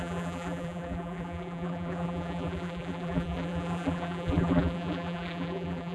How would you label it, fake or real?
fake